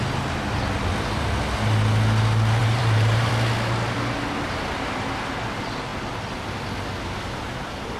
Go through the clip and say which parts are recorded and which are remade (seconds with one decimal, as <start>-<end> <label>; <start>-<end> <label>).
0.0-2.6 recorded; 2.6-3.3 remade; 3.3-8.0 recorded

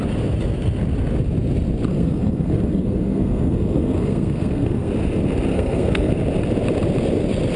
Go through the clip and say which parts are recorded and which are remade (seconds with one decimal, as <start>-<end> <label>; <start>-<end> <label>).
0.0-1.9 recorded; 1.9-4.9 remade; 4.9-5.5 recorded; 5.5-6.1 remade; 6.1-7.6 recorded

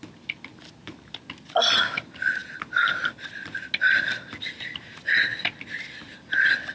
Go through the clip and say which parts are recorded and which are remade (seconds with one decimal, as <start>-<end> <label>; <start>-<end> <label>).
0.0-6.7 recorded

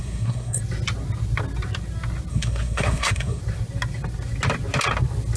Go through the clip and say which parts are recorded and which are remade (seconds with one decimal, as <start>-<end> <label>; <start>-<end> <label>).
0.0-0.6 remade; 0.6-2.3 recorded; 2.3-3.4 remade; 3.4-5.4 recorded

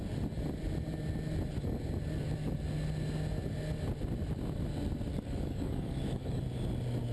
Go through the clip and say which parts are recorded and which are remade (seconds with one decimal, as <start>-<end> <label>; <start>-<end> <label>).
0.0-5.1 recorded; 5.1-6.4 remade; 6.4-7.1 recorded

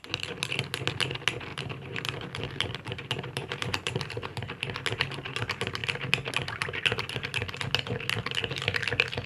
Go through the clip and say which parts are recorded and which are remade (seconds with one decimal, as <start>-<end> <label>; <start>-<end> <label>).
0.0-1.5 recorded; 1.5-4.1 remade; 4.1-9.3 recorded

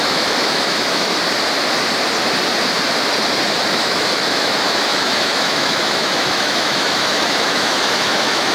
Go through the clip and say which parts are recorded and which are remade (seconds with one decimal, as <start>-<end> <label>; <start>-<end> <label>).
0.0-1.1 remade; 1.1-3.7 recorded; 3.7-8.5 remade